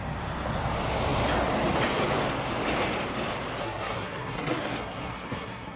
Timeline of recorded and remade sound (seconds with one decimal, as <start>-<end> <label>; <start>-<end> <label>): 0.0-3.6 recorded; 3.6-5.8 remade